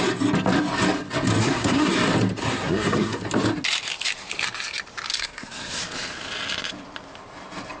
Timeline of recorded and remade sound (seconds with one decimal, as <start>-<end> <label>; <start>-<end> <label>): 0.0-1.4 recorded; 1.4-1.9 remade; 1.9-2.4 recorded; 2.4-3.2 remade; 3.2-5.1 recorded; 5.1-5.8 remade; 5.8-7.8 recorded